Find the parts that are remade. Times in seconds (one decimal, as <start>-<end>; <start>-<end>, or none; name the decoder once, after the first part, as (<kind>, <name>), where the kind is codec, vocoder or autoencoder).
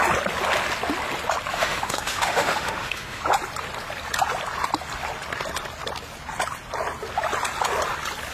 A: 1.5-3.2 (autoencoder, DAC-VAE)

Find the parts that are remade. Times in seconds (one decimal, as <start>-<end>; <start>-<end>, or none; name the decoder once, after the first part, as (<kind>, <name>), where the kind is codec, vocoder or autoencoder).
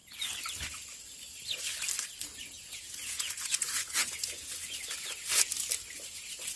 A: 2.3-4.5 (vocoder, Vocos)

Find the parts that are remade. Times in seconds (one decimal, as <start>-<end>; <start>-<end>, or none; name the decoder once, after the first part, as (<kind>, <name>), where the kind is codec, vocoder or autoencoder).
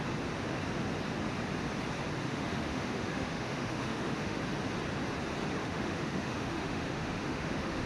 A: 2.2-4.4 (autoencoder, DAC-VAE); 5.6-7.9